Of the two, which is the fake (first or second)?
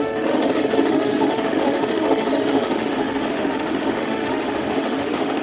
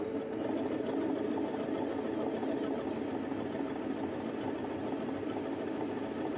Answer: first